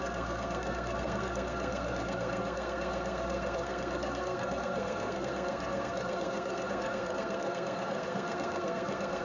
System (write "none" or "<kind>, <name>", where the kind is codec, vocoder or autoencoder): codec, SNAC